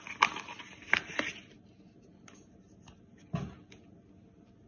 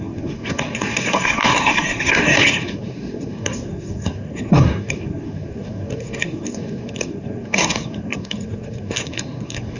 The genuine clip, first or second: first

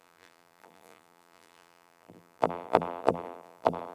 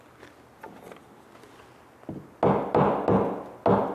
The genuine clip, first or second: second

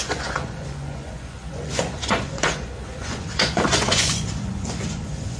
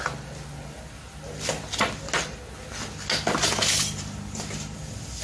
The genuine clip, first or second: second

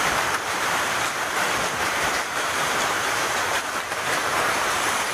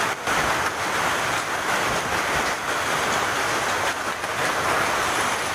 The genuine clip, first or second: second